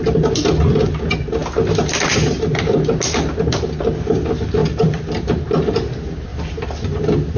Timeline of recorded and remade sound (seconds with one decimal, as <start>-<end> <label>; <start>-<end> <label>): 0.0-4.6 recorded; 4.6-5.4 remade; 5.4-6.3 recorded; 6.3-7.4 remade